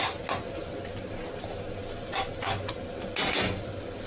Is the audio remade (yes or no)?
no